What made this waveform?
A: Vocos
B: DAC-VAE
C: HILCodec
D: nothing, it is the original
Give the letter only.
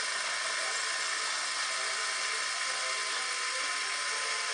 D